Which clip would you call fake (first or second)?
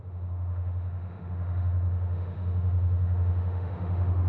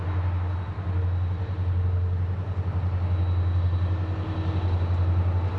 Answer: first